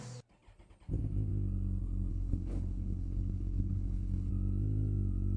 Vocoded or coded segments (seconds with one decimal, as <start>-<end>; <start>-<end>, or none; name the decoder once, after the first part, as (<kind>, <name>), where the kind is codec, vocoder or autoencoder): 2.1-4.3 (codec, HILCodec)